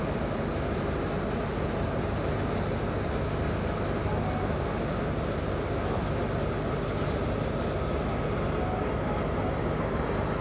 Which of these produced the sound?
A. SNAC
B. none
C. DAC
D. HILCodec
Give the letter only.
B